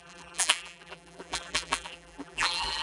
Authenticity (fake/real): fake